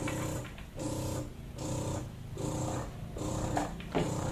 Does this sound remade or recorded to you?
recorded